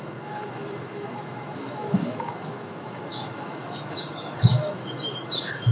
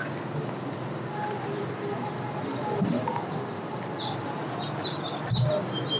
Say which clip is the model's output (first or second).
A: first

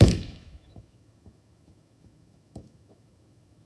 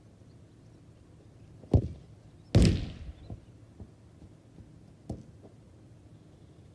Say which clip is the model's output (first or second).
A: first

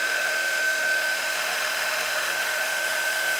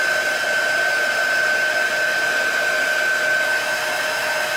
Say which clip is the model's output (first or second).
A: first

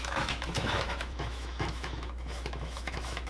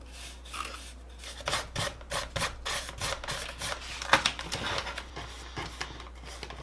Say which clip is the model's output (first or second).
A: first